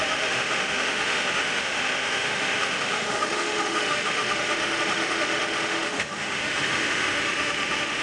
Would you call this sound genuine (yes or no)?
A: no